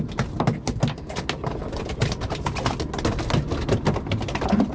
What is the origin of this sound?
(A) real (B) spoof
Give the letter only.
A